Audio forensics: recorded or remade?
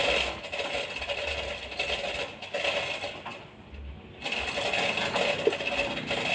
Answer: recorded